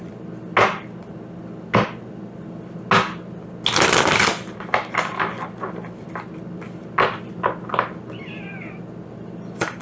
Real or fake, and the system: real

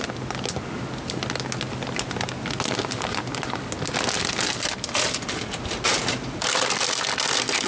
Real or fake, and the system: real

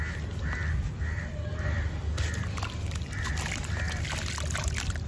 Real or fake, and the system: real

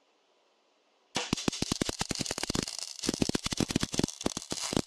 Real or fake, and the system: real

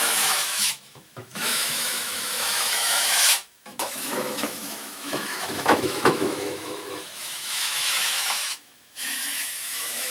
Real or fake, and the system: fake, autoencoder, DAC-VAE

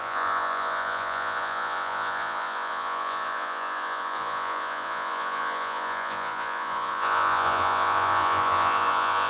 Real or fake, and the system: fake, vocoder, Vocos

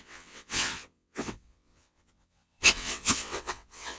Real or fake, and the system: fake, vocoder, WaveNeXt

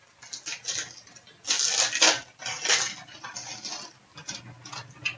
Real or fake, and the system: real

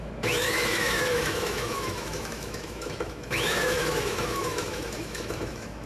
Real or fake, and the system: fake, autoencoder, DAC-VAE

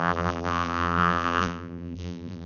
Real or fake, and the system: fake, vocoder, BigVGAN v2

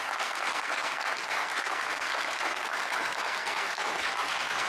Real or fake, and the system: fake, codec, SNAC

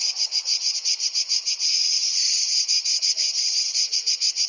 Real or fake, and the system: fake, vocoder, HiFi-GAN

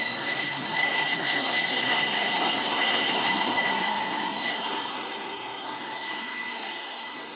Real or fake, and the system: fake, codec, SNAC